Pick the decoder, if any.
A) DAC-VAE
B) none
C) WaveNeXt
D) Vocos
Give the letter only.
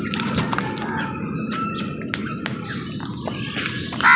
B